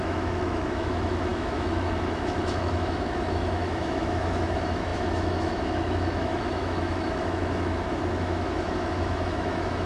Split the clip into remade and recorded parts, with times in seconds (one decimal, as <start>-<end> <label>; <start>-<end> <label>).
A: 0.0-9.9 remade